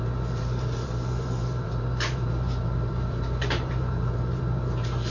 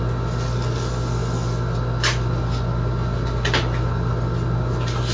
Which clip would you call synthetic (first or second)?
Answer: first